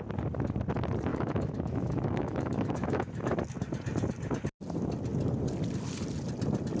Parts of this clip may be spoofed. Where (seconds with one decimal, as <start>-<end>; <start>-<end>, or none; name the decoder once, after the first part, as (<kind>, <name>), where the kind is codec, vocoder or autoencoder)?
1.1-3.4 (autoencoder, DAC-VAE)